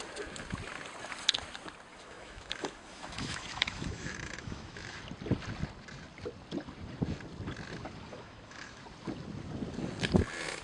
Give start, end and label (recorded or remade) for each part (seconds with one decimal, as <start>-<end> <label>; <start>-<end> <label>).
0.0-1.9 recorded; 1.9-5.0 remade; 5.0-8.1 recorded; 8.1-8.8 remade; 8.8-10.6 recorded